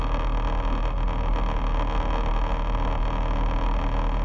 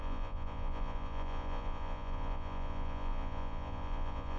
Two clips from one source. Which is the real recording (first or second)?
first